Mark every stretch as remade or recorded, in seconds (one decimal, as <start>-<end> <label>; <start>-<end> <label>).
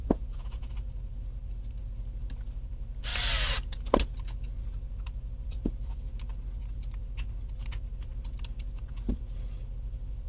0.0-0.7 remade; 0.7-10.3 recorded